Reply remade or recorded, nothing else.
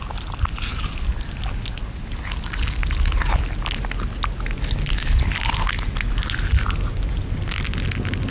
recorded